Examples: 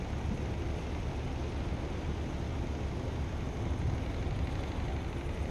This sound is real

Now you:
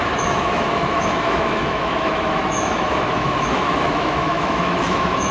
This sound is fake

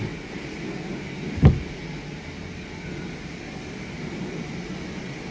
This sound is real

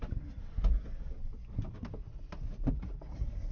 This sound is real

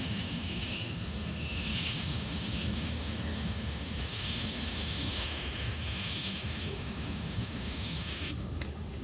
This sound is fake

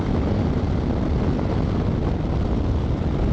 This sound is real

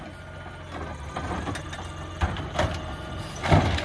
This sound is real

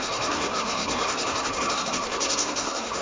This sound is fake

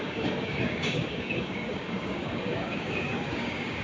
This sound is fake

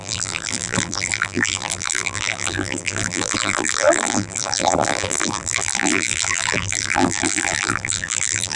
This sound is fake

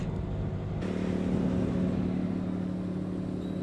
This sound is real